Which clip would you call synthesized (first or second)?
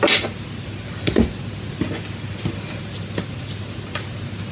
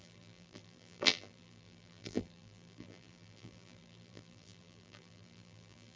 second